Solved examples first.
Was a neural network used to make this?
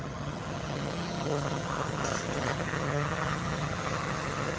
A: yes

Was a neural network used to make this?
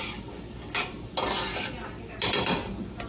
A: no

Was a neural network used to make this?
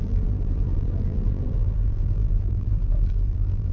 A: yes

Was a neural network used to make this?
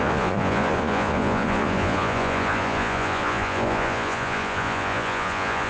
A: yes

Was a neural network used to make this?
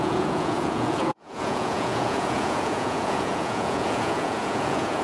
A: yes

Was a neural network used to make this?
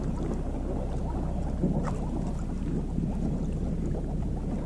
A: no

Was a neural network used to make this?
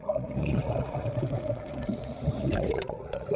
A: yes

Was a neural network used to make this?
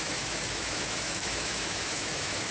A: yes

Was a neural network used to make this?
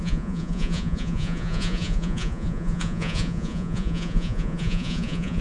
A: yes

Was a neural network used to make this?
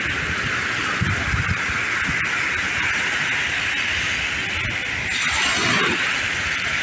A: no